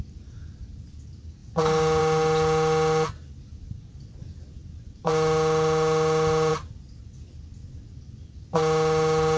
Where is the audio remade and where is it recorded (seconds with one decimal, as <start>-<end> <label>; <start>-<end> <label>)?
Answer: 0.0-9.4 recorded